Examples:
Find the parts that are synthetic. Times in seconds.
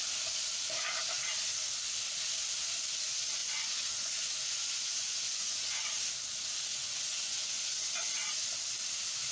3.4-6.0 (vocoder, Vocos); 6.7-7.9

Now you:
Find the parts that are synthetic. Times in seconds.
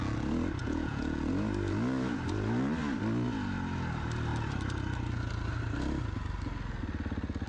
0.6-1.3 (vocoder, Vocos)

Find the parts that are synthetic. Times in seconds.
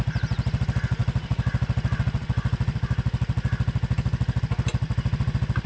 none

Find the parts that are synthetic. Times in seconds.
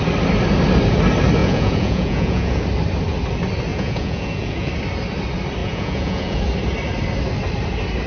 1.4-2.6 (vocoder, Vocos); 3.7-4.7; 5.6-6.4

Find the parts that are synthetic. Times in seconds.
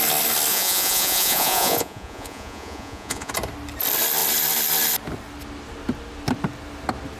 0.5-3.3 (vocoder, Vocos)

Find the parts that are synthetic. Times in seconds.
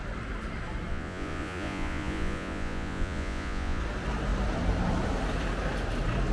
0.9-3.8 (vocoder, Vocos)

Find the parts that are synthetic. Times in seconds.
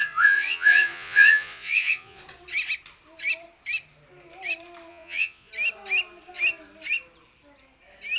0.0-2.2 (vocoder, Vocos); 4.9-5.5